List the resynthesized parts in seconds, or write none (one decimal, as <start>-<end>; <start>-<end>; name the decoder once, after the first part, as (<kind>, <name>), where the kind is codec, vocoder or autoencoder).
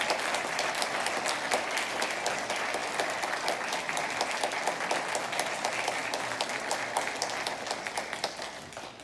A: 2.8-4.3 (vocoder, BigVGAN v2)